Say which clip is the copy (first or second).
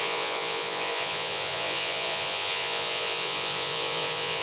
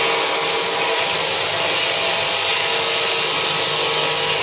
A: first